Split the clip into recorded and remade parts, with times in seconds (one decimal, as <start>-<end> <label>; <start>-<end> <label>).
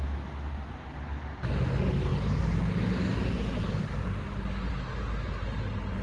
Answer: 0.0-6.0 recorded